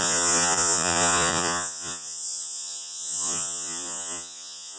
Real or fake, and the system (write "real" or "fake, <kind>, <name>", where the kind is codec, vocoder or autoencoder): fake, vocoder, Vocos